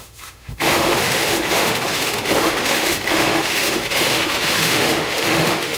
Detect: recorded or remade remade